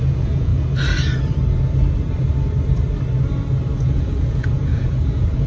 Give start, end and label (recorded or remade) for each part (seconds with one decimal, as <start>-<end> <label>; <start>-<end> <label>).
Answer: 0.0-0.5 remade; 0.5-3.8 recorded; 3.8-5.5 remade